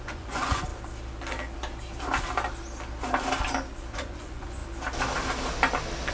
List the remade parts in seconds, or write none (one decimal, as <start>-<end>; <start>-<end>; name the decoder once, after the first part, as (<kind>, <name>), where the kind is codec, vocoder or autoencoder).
0.0-0.7 (vocoder, Vocos); 3.9-4.6